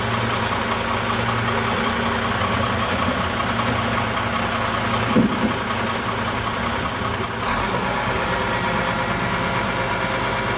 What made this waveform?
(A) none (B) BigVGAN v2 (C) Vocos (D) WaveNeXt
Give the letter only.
A